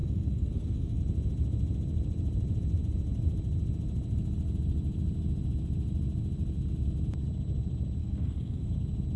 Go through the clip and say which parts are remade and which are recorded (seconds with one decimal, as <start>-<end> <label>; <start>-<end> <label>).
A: 0.0-1.0 remade; 1.0-8.0 recorded; 8.0-8.7 remade; 8.7-9.2 recorded